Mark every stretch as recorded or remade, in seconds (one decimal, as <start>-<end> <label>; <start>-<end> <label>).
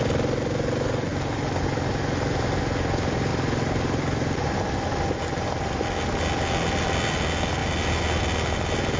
0.0-3.3 recorded; 3.3-5.6 remade; 5.6-9.0 recorded